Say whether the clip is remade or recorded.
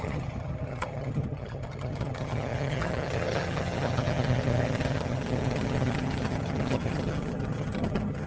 remade